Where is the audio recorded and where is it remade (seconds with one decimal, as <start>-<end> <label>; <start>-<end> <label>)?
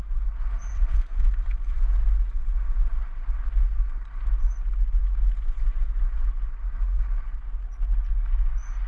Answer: 0.0-0.7 recorded; 0.7-1.7 remade; 1.7-8.9 recorded